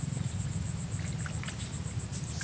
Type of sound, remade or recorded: recorded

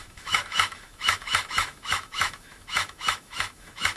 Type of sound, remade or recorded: remade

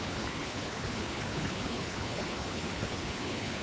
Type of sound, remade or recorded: remade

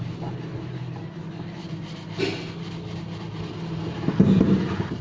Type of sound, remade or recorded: recorded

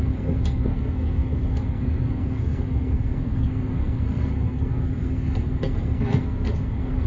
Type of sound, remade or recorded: remade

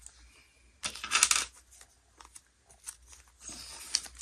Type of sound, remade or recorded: recorded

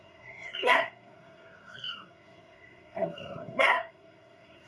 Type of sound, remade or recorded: remade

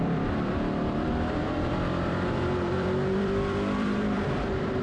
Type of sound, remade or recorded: remade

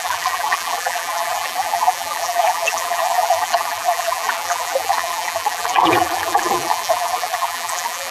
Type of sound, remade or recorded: remade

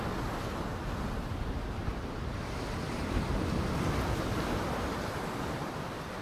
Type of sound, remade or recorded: recorded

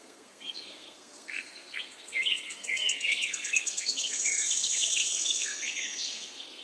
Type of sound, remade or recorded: remade